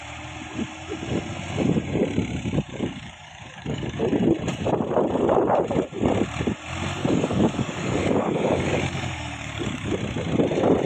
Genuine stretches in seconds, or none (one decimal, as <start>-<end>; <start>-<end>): 0.0-2.7; 4.0-7.0; 9.9-10.9